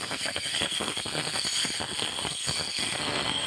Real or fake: fake